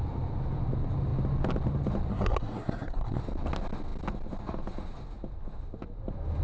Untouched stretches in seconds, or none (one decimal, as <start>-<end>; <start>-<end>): 0.0-2.1; 3.2-6.4